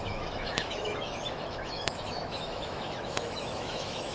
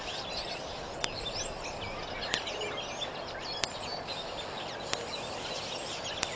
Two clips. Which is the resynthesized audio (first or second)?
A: first